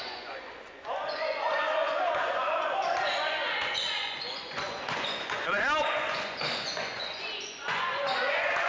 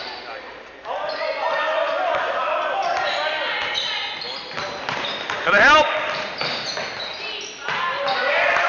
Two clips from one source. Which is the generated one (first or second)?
first